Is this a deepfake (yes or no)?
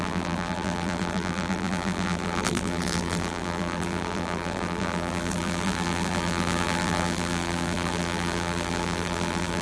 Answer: yes